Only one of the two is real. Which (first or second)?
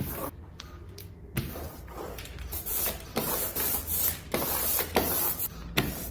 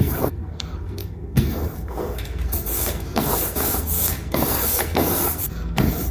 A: first